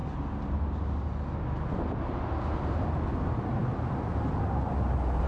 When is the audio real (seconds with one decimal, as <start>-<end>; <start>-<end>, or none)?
0.0-5.3